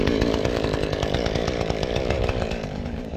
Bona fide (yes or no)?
no